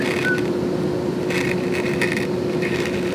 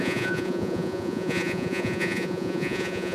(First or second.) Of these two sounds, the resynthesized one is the second